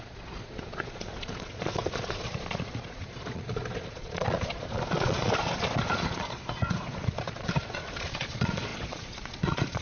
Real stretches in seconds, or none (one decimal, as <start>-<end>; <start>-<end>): none